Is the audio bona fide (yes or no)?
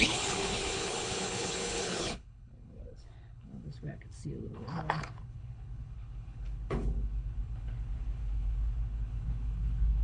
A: no